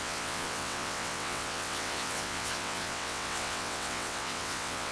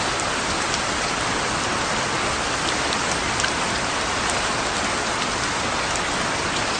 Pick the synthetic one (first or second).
first